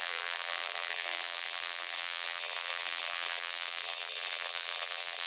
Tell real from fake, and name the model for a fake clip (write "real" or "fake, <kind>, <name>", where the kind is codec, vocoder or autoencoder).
fake, vocoder, BigVGAN v2